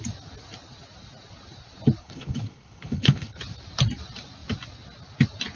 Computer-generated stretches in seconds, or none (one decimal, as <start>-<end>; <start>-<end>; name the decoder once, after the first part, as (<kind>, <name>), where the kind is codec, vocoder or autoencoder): 2.0-3.4 (codec, HILCodec)